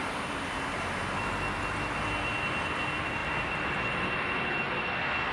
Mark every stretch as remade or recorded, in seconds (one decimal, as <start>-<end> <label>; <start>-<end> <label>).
0.0-5.3 recorded